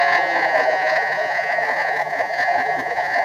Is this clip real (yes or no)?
no